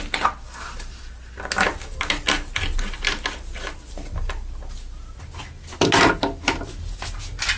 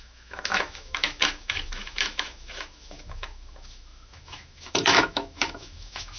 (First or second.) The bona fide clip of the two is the first